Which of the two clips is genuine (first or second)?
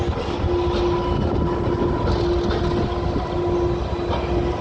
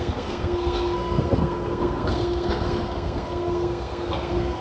first